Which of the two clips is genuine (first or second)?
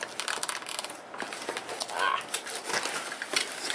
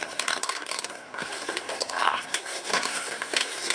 first